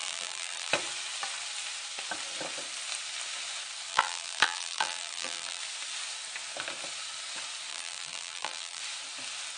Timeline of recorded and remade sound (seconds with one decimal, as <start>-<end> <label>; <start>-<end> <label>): 0.0-0.7 remade; 0.7-3.9 recorded; 3.9-5.6 remade; 5.6-7.7 recorded; 7.7-8.8 remade; 8.8-9.6 recorded